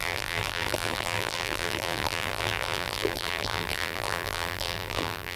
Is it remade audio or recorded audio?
remade